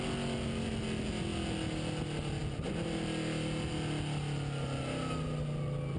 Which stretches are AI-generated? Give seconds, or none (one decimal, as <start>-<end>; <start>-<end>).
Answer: none